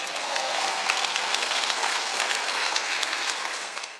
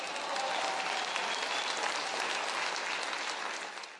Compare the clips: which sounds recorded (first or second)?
second